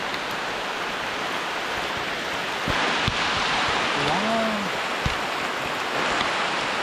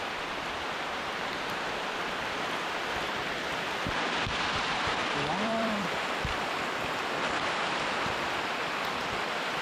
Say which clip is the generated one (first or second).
second